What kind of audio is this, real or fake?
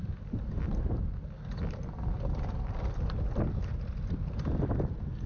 real